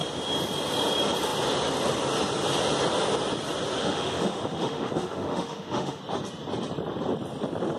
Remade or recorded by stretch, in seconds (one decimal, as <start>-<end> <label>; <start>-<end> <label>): 0.0-3.8 recorded; 3.8-6.0 remade; 6.0-7.8 recorded